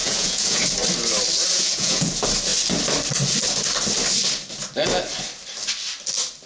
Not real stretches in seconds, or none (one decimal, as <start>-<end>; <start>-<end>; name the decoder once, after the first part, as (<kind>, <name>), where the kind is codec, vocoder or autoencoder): 0.0-0.6 (vocoder, Vocos); 1.5-2.1